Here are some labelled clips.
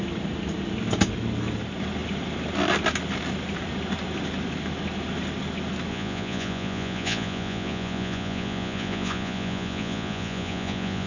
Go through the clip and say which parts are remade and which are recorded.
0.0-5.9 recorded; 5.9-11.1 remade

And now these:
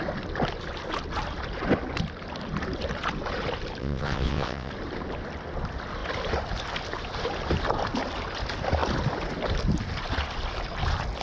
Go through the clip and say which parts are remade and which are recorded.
0.0-3.8 recorded; 3.8-4.7 remade; 4.7-11.2 recorded

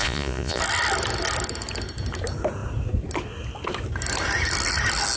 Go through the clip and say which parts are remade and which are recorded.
0.0-0.6 remade; 0.6-5.2 recorded

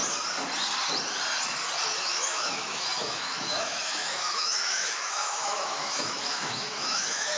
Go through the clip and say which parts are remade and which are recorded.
0.0-2.0 recorded; 2.0-7.4 remade

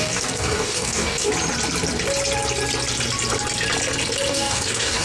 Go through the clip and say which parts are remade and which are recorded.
0.0-1.3 remade; 1.3-4.3 recorded; 4.3-5.0 remade

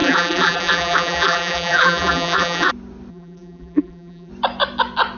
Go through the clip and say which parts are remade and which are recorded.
0.0-2.7 remade; 2.7-3.1 recorded; 3.1-4.3 remade; 4.3-5.2 recorded

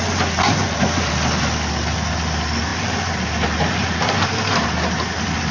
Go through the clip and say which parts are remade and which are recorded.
0.0-2.7 recorded; 2.7-5.5 remade